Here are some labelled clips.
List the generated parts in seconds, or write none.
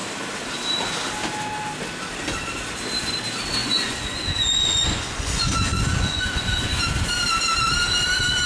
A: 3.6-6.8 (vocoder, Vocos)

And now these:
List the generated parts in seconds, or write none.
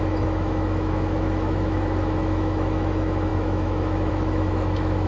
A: 0.0-5.1 (autoencoder, DAC-VAE)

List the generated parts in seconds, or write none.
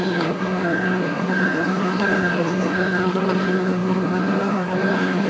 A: 0.0-5.3 (codec, SNAC)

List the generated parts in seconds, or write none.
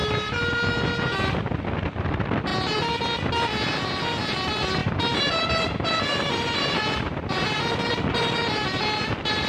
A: 4.8-9.5 (vocoder, BigVGAN v2)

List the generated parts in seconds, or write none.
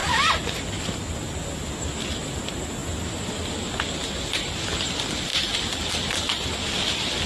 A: none